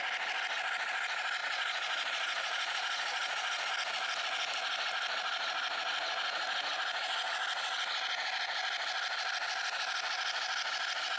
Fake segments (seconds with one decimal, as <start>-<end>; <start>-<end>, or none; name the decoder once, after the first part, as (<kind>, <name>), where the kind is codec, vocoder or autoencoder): 1.4-3.7 (vocoder, Vocos)